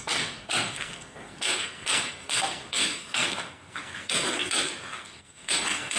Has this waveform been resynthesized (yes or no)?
yes